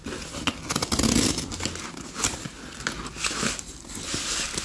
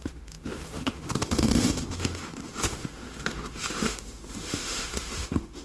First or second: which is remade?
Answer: second